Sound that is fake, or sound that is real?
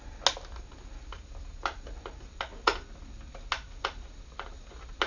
real